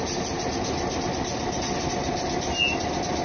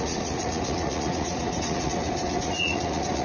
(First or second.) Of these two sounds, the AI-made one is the second